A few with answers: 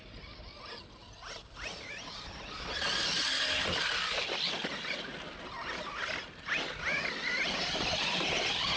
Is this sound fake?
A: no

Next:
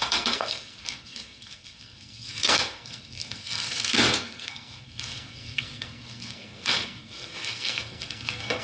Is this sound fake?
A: yes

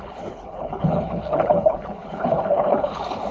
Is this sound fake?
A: yes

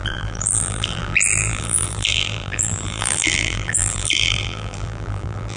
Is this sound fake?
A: yes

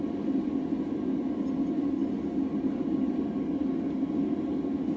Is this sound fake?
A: no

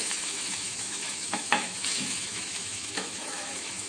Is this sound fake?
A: yes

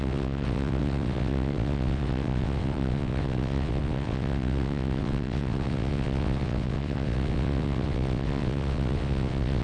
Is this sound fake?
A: yes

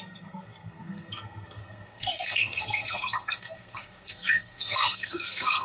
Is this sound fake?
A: yes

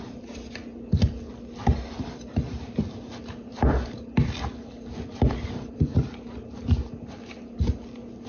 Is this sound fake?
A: no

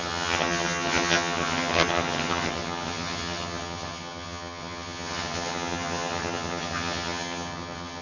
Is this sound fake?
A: yes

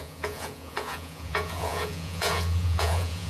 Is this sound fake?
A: yes